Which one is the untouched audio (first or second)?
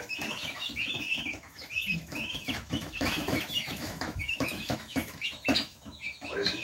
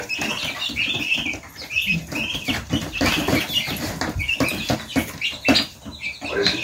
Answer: second